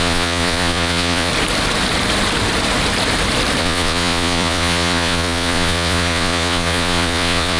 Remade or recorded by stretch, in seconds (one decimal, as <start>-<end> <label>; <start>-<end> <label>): 0.0-1.3 remade; 1.3-3.6 recorded; 3.6-7.6 remade